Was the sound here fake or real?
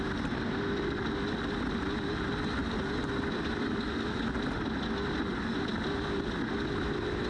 real